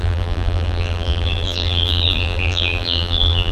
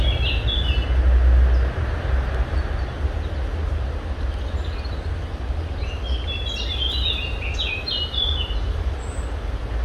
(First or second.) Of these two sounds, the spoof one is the first